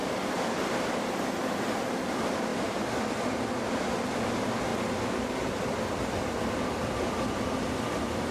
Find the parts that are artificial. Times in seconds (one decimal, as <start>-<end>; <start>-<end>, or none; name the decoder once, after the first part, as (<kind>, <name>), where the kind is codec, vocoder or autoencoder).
2.5-3.1 (vocoder, BigVGAN v2)